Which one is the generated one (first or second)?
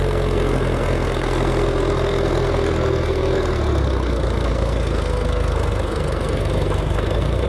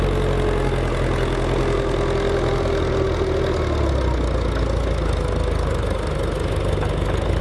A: first